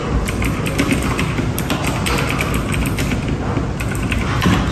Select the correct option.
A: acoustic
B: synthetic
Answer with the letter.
A